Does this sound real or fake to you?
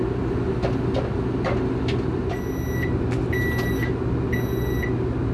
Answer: real